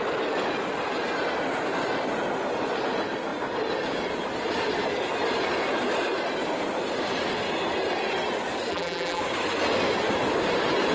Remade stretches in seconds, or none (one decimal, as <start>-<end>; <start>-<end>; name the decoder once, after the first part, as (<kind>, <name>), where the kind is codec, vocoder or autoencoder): 8.7-9.2 (vocoder, BigVGAN v2)